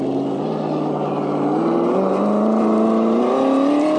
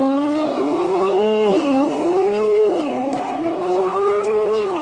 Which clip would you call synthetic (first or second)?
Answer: second